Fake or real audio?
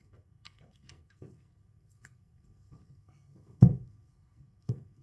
fake